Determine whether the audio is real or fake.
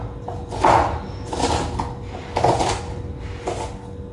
real